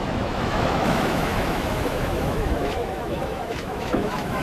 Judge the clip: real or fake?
fake